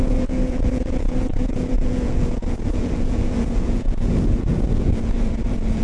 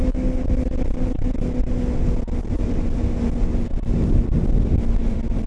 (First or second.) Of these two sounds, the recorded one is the second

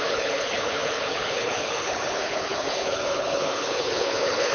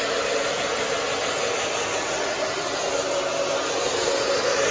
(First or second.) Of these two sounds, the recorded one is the second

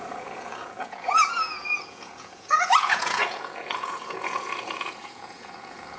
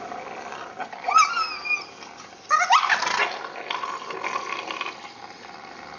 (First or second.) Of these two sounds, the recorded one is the second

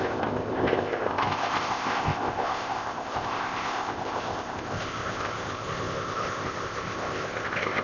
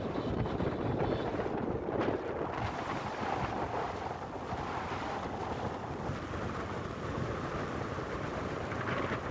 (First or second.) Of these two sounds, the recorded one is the second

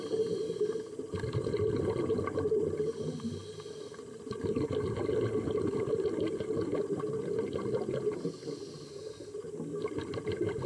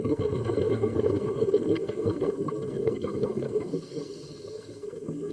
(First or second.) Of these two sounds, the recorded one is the first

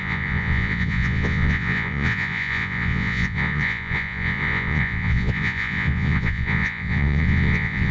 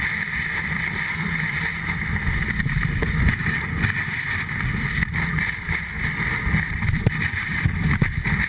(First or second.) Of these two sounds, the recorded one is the second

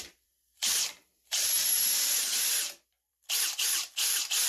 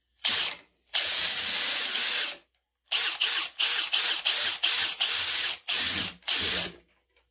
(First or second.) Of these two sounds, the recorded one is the second